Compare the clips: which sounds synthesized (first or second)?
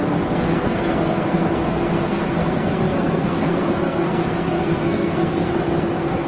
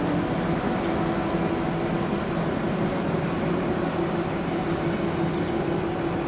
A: first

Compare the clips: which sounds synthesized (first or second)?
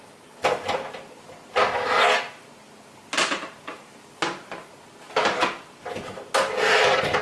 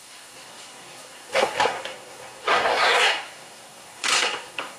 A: second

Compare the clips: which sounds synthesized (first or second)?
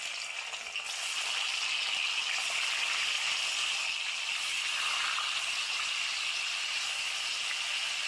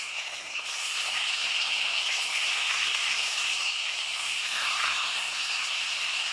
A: second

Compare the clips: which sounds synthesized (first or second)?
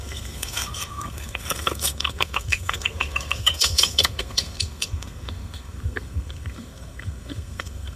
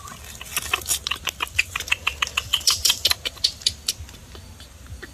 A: first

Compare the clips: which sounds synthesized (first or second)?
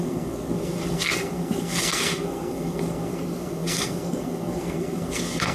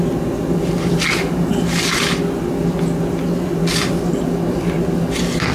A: first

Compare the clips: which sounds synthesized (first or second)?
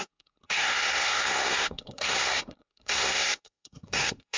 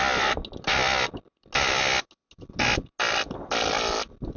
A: first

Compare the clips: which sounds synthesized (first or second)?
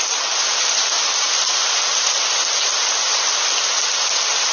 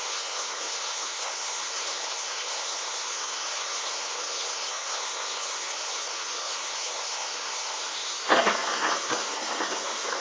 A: second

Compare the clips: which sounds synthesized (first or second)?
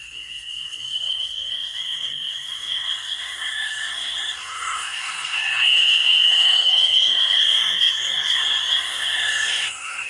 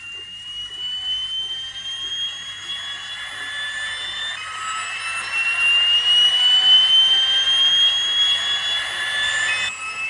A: first